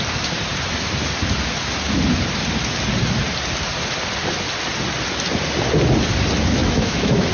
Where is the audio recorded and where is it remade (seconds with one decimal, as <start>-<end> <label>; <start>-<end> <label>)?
0.0-6.6 recorded; 6.6-7.3 remade